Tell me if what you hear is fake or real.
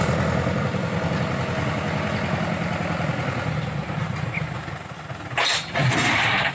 real